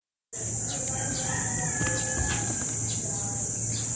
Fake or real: real